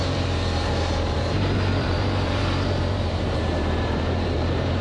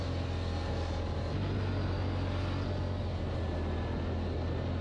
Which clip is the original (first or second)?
second